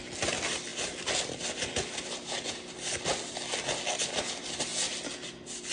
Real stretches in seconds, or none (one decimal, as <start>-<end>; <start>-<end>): 0.0-5.7